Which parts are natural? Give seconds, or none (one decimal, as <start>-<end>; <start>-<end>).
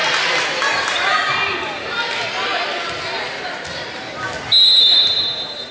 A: 0.0-5.7